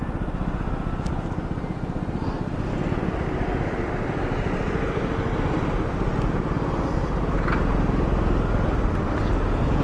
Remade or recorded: recorded